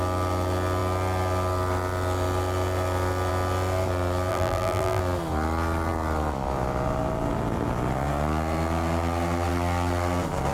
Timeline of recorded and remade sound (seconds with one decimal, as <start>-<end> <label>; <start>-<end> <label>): 0.0-4.3 recorded; 4.3-5.0 remade; 5.0-10.5 recorded